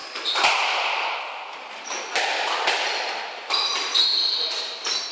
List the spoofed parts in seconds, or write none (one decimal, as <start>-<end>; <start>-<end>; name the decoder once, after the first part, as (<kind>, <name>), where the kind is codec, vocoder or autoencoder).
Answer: none